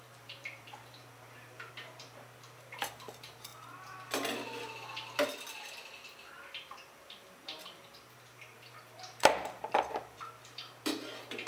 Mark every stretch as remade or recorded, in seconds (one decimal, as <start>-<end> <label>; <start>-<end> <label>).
0.0-3.5 remade; 3.5-6.3 recorded; 6.3-11.5 remade